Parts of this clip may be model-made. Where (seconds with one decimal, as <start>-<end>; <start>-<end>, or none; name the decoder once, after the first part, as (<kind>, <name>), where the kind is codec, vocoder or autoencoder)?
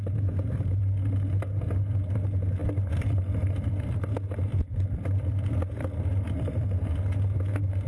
2.6-4.1 (vocoder, BigVGAN v2); 4.5-6.9